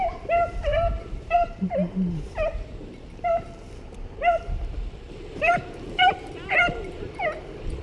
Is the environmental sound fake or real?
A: fake